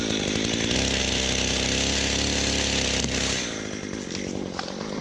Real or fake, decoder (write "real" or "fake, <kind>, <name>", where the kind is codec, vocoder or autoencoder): real